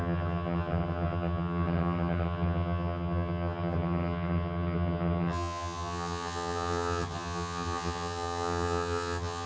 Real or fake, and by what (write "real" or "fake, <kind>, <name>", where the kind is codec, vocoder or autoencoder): fake, vocoder, HiFi-GAN